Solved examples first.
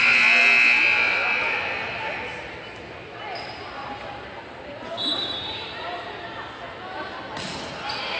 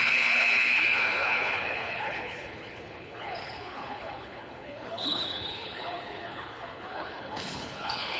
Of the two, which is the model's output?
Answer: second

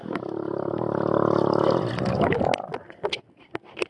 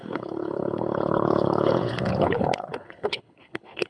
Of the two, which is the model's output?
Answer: second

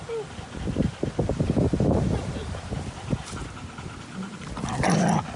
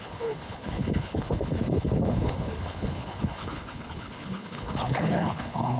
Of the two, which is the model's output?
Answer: second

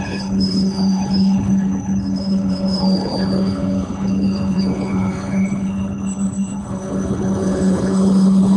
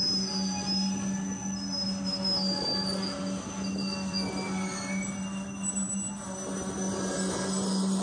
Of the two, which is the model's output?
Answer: first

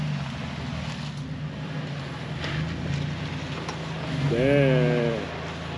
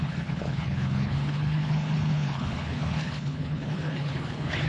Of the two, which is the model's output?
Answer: second